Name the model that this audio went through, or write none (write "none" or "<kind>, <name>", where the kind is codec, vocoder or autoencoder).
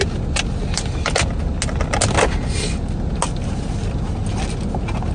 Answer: none